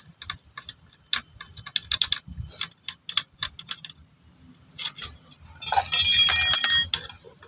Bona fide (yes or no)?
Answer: yes